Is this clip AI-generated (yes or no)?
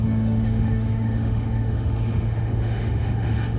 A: yes